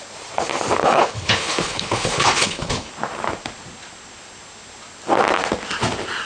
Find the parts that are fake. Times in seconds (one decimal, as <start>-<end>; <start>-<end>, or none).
0.8-2.9